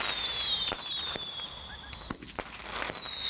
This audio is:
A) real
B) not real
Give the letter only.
A